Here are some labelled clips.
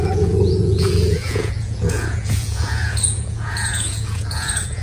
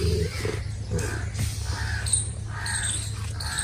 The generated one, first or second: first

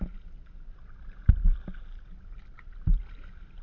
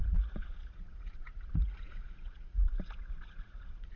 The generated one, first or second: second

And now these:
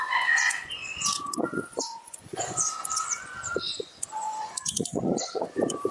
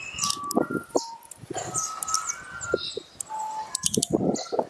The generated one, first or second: first